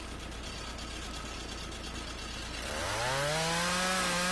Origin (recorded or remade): recorded